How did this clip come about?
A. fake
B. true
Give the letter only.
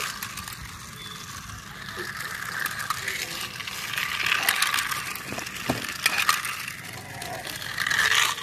B